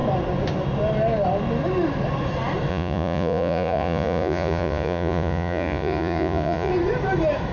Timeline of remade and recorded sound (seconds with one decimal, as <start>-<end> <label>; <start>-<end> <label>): 0.0-2.7 recorded; 2.7-6.7 remade; 6.7-7.5 recorded